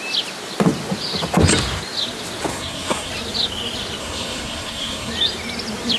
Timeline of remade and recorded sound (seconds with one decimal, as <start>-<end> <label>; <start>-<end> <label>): 0.0-2.5 recorded; 2.5-3.1 remade; 3.1-4.0 recorded; 4.0-5.1 remade; 5.1-6.0 recorded